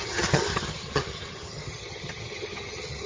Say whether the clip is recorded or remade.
remade